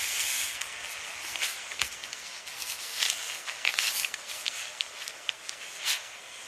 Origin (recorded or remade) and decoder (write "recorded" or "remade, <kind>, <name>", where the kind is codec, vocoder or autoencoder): remade, codec, SNAC